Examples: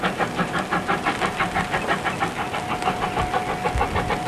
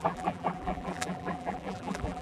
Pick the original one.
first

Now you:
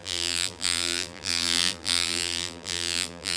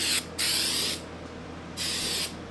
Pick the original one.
second